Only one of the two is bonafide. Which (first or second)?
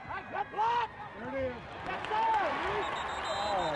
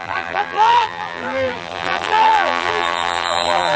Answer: first